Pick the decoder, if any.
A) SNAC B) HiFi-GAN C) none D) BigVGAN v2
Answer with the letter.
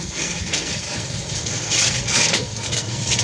A